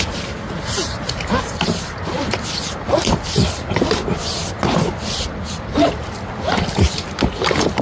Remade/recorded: recorded